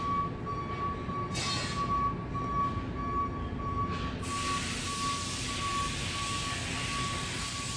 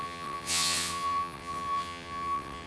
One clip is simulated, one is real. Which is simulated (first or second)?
second